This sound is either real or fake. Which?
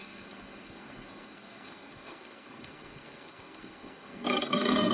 fake